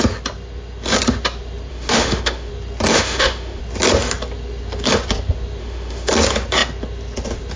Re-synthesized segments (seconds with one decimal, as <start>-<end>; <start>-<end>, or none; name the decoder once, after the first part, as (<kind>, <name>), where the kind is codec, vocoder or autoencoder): 1.7-2.5 (autoencoder, DAC-VAE); 2.9-3.6; 5.6-6.1

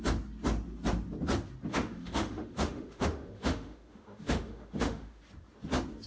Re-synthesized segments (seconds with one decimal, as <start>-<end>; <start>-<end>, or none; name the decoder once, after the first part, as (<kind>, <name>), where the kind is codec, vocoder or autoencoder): 1.7-5.2 (autoencoder, DAC-VAE)

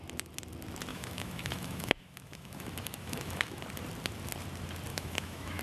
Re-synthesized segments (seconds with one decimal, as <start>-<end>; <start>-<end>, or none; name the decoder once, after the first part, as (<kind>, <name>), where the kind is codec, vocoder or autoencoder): 0.9-3.6 (autoencoder, DAC-VAE); 4.9-5.6

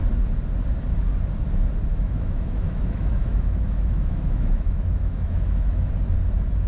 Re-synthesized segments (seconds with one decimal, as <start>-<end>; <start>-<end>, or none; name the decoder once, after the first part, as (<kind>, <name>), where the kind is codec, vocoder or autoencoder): 1.9-5.9 (autoencoder, DAC-VAE)